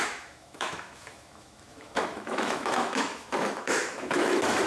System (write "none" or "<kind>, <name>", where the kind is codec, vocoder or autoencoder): autoencoder, DAC-VAE